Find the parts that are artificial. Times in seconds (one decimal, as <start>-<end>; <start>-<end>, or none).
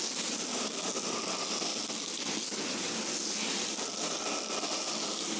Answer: none